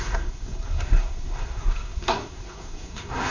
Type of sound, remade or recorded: remade